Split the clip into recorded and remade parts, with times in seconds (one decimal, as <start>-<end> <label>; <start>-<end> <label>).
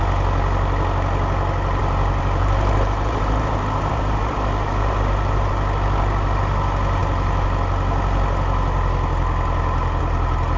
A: 0.0-1.8 recorded; 1.8-5.5 remade; 5.5-10.6 recorded